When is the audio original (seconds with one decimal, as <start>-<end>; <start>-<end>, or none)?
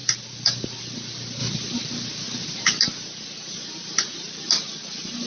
0.0-5.3